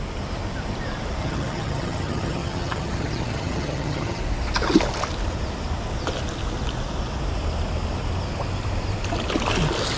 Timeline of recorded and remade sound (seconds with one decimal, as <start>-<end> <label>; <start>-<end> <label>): 0.0-1.2 recorded; 1.2-4.2 remade; 4.2-10.0 recorded